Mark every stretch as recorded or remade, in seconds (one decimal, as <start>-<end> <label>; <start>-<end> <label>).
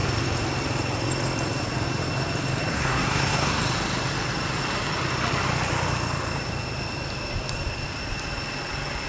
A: 0.0-2.7 recorded; 2.7-3.6 remade; 3.6-9.1 recorded